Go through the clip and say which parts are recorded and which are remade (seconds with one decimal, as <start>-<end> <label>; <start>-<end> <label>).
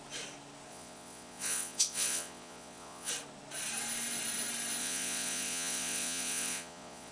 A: 0.0-0.7 recorded; 0.7-3.1 remade; 3.1-4.8 recorded; 4.8-7.1 remade